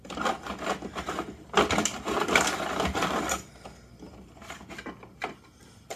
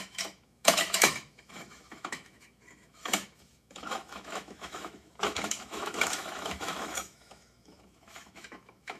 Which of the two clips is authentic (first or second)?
first